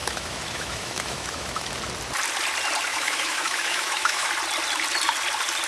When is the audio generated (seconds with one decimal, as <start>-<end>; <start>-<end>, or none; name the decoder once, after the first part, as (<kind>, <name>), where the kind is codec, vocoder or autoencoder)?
0.0-1.7 (autoencoder, DAC-VAE); 2.9-4.3